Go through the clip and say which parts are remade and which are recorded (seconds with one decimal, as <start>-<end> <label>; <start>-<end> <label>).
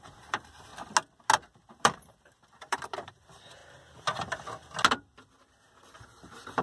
0.0-0.7 remade; 0.7-1.7 recorded; 1.7-3.6 remade; 3.6-5.7 recorded; 5.7-6.6 remade